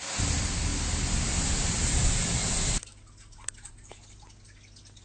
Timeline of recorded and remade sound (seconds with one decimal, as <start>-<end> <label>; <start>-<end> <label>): 0.0-5.0 recorded